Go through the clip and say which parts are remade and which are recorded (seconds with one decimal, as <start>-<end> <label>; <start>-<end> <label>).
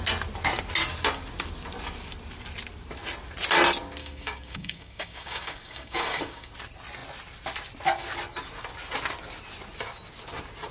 0.0-4.0 recorded; 4.0-6.5 remade; 6.5-10.7 recorded